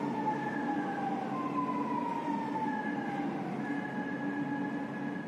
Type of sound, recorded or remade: recorded